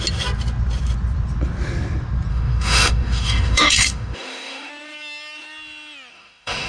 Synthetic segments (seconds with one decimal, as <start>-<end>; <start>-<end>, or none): 2.3-4.7; 6.1-6.7